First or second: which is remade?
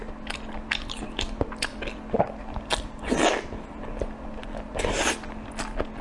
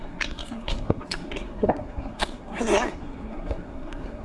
second